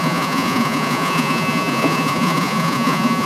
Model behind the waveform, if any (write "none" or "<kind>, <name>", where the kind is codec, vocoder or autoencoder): vocoder, Vocos